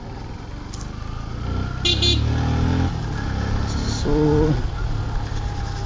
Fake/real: real